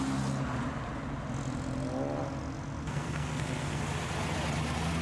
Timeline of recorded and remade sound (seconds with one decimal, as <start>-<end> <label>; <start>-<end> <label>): 0.0-2.8 recorded; 2.8-3.8 remade; 3.8-5.0 recorded